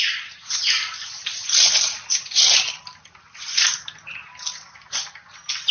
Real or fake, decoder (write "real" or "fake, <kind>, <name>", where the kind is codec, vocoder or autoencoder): real